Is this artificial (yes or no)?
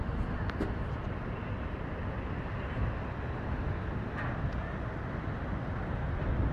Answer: no